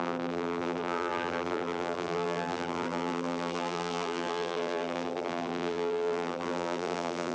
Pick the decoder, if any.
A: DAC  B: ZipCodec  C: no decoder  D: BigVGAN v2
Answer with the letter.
D